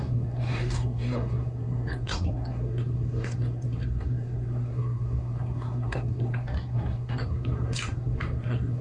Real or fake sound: fake